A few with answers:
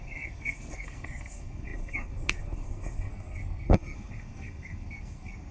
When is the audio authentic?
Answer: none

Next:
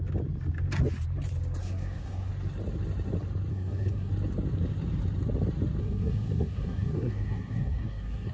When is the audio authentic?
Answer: 0.0-1.6; 2.3-3.5; 4.1-5.8

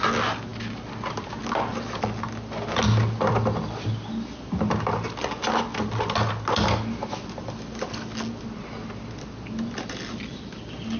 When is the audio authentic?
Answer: 0.0-11.0